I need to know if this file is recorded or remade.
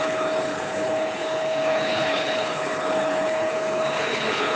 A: remade